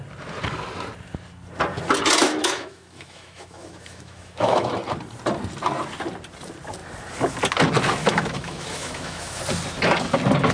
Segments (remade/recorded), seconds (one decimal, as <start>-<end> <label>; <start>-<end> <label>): 0.0-2.2 recorded; 2.2-4.7 remade; 4.7-8.0 recorded; 8.0-9.4 remade; 9.4-10.5 recorded